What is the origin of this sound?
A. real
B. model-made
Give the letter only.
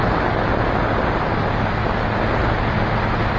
A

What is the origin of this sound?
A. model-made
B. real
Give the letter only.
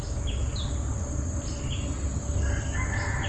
B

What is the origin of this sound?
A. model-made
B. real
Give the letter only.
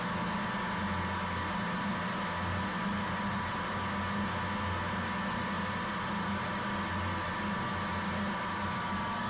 B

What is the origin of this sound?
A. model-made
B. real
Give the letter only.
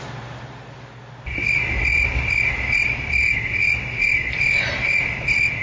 B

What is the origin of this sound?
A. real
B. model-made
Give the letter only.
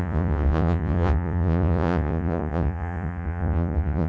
B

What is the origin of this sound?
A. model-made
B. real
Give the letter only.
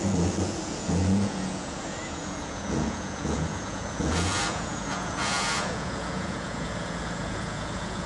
A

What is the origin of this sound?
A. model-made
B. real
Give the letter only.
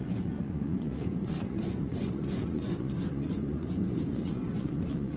A